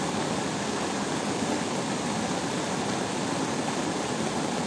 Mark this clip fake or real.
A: real